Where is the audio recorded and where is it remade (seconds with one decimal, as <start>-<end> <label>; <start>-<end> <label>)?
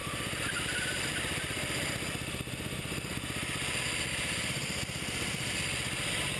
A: 0.0-6.4 recorded